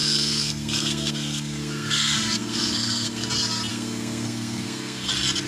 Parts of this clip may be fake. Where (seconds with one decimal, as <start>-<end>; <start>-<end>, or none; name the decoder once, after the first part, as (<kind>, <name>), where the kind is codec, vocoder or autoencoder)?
0.0-3.3 (codec, SNAC); 3.7-5.1